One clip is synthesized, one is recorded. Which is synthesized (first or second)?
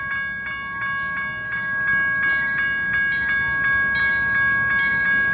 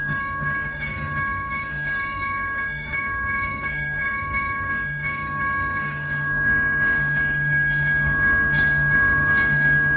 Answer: second